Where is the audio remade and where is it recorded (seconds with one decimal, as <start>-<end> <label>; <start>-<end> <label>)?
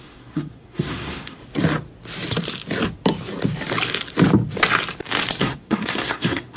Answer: 0.0-1.4 remade; 1.4-5.4 recorded; 5.4-6.6 remade